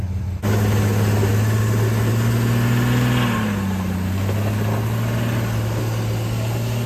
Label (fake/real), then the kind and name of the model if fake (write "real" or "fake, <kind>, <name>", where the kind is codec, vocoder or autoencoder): real